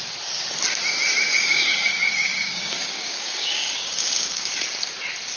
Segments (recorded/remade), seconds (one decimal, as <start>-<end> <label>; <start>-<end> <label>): 0.0-1.3 recorded; 1.3-4.5 remade; 4.5-5.4 recorded